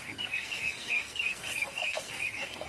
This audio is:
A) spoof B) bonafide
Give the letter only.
A